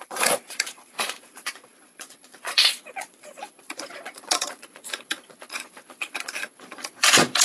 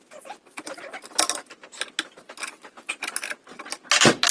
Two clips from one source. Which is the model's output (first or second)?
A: first